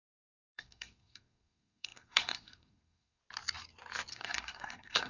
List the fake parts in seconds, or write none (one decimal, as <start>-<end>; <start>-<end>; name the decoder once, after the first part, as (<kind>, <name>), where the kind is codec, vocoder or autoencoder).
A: 0.0-3.2 (codec, SNAC); 4.1-5.1